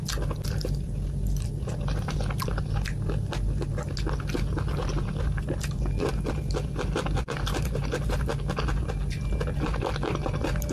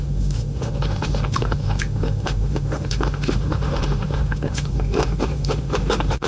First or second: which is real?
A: first